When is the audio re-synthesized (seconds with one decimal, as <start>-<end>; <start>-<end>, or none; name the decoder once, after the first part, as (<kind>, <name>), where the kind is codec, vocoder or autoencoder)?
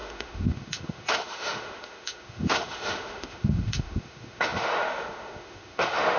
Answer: 0.0-6.2 (autoencoder, DAC-VAE)